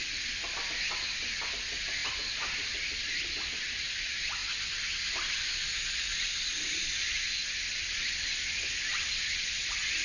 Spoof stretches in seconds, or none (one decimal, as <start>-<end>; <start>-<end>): none